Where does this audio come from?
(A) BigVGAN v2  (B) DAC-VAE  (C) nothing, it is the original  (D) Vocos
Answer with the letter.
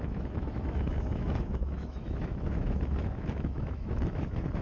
B